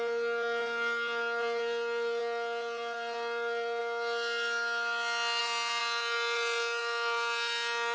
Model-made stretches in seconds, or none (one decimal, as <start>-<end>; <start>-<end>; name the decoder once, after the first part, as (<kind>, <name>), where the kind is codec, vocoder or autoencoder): 0.0-3.8 (vocoder, Vocos); 5.4-7.9